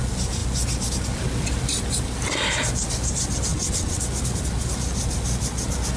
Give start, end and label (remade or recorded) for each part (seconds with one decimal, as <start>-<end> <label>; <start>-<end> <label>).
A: 0.0-3.5 recorded; 3.5-4.0 remade; 4.0-6.0 recorded